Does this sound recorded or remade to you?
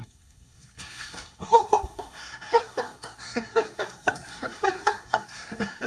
remade